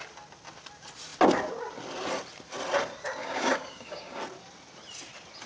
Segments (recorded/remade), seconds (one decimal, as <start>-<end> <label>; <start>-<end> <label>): 0.0-3.2 recorded; 3.2-4.2 remade; 4.2-5.5 recorded